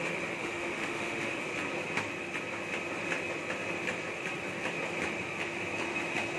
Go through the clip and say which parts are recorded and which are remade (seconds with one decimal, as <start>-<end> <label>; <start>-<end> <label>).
0.0-0.4 recorded; 0.4-1.4 remade; 1.4-6.4 recorded